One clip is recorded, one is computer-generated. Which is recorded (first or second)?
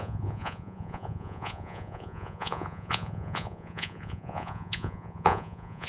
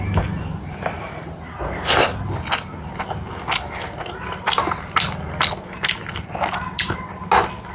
second